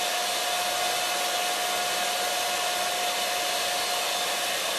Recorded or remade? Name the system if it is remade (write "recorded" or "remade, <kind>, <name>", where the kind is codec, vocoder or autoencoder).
recorded